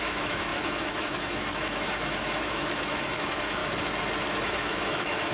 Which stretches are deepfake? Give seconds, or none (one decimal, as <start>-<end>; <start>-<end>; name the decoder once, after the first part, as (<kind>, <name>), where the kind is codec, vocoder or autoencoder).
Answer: 0.0-3.6 (autoencoder, DAC-VAE); 4.2-5.3